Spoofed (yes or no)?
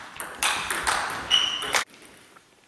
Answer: yes